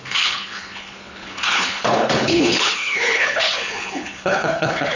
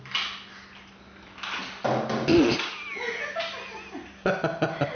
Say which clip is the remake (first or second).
first